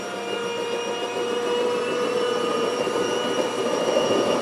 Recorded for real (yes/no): yes